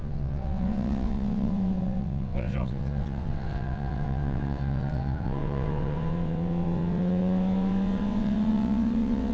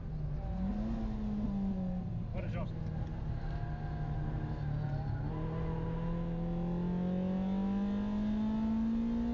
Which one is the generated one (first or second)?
first